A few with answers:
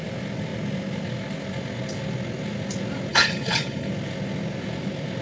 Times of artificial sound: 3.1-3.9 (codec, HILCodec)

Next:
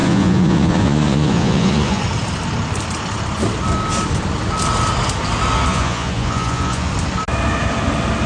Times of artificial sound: 0.0-2.0 (vocoder, Vocos); 5.7-6.9

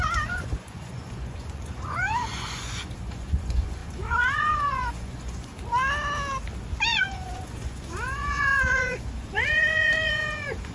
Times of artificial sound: 0.0-5.5 (vocoder, Vocos); 6.9-10.7

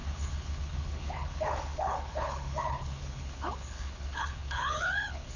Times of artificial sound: 0.0-5.4 (codec, HILCodec)

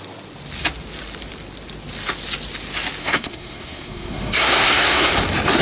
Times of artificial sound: 3.0-5.1 (codec, SNAC)

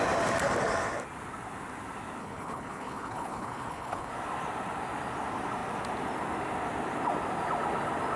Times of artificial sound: 2.2-4.1 (codec, HILCodec)

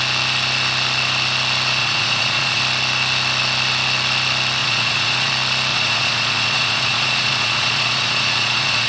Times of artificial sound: 1.8-2.6 (vocoder, Vocos); 4.6-5.3; 5.7-8.9